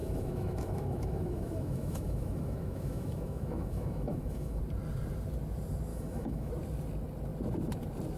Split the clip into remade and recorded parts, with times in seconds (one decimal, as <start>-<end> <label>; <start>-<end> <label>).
0.0-4.6 remade; 4.6-5.9 recorded; 5.9-6.5 remade; 6.5-8.2 recorded